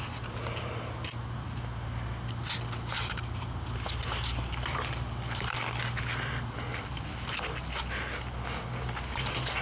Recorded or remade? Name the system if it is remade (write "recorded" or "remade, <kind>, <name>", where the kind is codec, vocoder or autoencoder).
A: recorded